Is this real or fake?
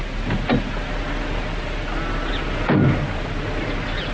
real